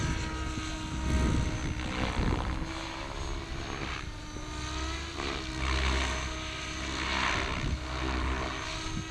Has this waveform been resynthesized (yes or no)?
no